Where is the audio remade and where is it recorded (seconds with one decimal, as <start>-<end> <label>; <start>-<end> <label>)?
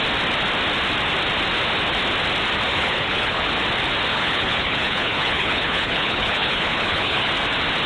0.0-2.7 recorded; 2.7-3.5 remade; 3.5-4.1 recorded; 4.1-7.3 remade; 7.3-7.9 recorded